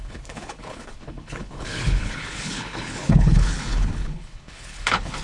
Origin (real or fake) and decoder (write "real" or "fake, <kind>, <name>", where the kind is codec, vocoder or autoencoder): fake, codec, HILCodec